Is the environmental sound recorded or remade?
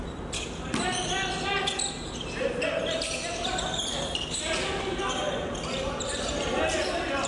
recorded